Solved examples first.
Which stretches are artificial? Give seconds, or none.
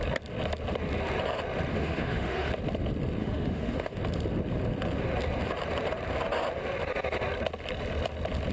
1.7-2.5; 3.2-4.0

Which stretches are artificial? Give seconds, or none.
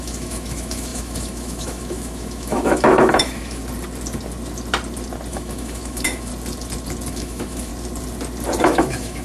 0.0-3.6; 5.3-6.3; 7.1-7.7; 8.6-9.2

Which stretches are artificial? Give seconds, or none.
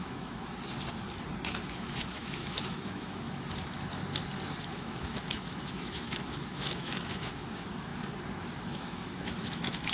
0.0-0.5; 1.4-4.0; 4.6-7.9; 8.6-9.9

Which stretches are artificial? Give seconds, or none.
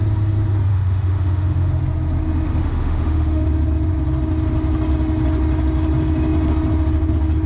0.7-1.8; 2.6-3.4